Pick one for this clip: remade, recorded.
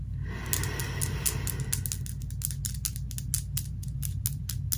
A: recorded